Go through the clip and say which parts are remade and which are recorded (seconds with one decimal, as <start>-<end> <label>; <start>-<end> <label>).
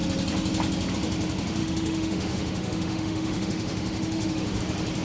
0.0-1.6 recorded; 1.6-4.6 remade; 4.6-5.0 recorded